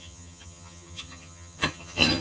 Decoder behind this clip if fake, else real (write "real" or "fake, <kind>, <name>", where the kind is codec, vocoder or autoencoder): fake, vocoder, HiFi-GAN